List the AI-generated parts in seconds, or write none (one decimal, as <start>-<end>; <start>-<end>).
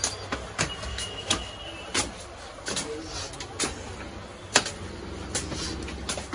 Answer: 0.9-1.5